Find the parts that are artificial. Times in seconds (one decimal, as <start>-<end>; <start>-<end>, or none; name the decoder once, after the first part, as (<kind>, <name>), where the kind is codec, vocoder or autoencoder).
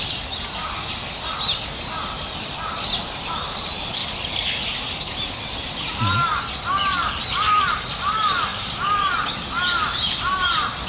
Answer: none